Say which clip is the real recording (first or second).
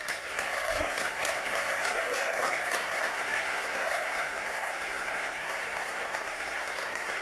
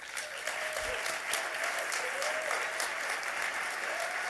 second